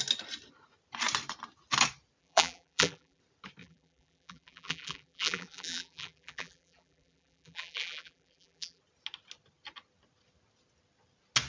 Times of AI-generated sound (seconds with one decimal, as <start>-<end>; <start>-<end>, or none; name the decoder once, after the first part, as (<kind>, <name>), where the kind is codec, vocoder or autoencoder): 2.2-3.2 (vocoder, BigVGAN v2); 3.6-8.8